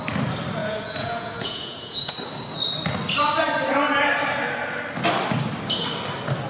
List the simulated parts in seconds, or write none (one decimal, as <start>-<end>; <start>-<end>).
0.6-2.1